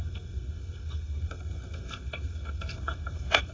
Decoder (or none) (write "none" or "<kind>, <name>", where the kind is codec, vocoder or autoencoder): codec, SNAC